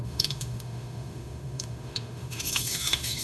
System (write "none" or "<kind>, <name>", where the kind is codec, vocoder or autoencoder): autoencoder, DAC-VAE